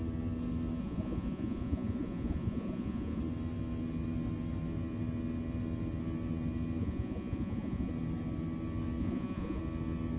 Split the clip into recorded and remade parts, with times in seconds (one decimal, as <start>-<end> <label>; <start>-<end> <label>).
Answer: 0.0-0.8 recorded; 0.8-3.2 remade; 3.2-6.8 recorded; 6.8-7.9 remade; 7.9-9.0 recorded; 9.0-9.6 remade; 9.6-10.2 recorded